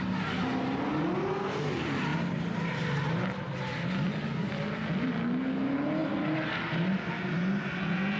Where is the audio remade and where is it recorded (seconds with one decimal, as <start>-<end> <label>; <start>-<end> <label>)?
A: 0.0-8.2 recorded